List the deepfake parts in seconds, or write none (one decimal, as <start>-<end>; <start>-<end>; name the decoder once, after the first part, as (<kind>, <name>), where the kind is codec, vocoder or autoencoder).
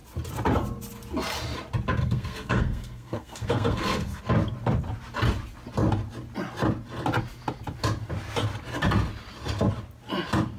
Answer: 2.0-4.2 (codec, SNAC)